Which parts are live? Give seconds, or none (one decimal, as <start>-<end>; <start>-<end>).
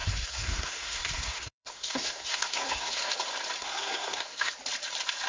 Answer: 3.1-3.6; 4.5-5.3